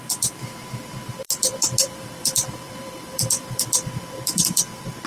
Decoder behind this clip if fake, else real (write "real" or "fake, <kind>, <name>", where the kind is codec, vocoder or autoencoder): fake, vocoder, BigVGAN v2